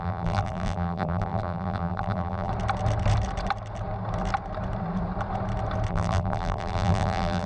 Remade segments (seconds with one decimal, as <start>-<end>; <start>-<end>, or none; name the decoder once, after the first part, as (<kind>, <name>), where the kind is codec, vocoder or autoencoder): 0.0-2.5 (vocoder, BigVGAN v2); 5.9-7.5